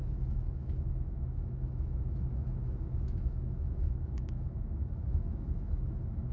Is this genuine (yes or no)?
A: no